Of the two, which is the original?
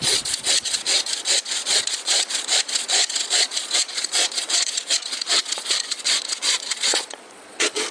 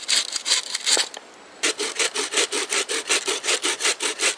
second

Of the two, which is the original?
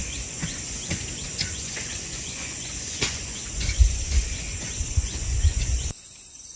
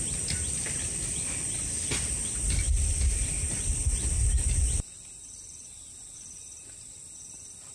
second